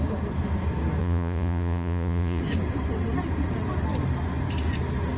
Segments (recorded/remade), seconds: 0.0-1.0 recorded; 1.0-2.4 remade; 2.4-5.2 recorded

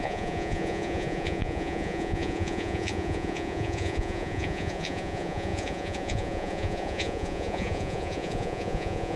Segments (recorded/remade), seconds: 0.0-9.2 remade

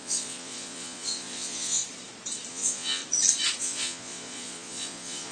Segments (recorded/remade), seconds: 0.0-1.8 remade; 1.8-2.5 recorded; 2.5-3.0 remade; 3.0-3.6 recorded; 3.6-5.3 remade

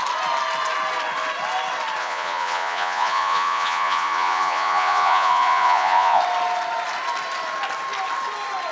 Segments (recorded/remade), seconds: 0.0-2.0 recorded; 2.0-6.2 remade; 6.2-8.7 recorded